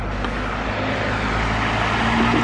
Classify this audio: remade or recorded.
recorded